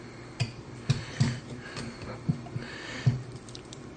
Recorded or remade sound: remade